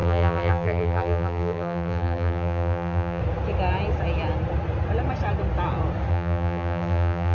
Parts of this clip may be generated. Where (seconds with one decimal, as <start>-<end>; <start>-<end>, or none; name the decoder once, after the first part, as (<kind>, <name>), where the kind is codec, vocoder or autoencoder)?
0.0-3.2 (vocoder, BigVGAN v2); 6.1-7.3